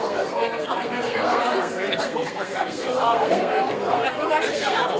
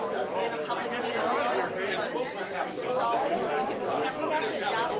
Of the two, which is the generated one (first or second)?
first